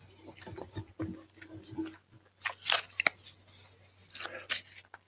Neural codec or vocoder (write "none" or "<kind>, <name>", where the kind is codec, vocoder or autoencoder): none